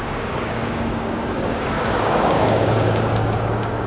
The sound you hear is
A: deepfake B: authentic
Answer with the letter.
A